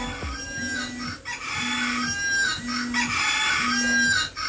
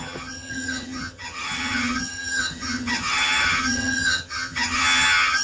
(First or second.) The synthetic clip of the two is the second